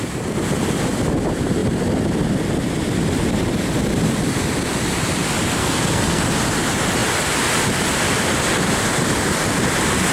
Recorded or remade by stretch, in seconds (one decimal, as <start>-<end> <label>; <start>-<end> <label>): 0.0-5.6 recorded; 5.6-6.2 remade; 6.2-10.1 recorded

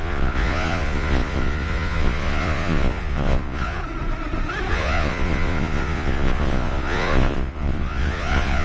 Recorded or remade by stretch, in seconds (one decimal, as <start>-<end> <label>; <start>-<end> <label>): 0.0-3.8 remade; 3.8-4.7 recorded; 4.7-8.6 remade